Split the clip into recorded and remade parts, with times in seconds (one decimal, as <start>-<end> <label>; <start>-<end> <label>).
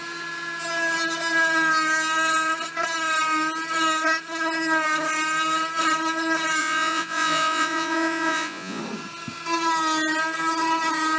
0.0-6.6 recorded; 6.6-8.8 remade; 8.8-11.2 recorded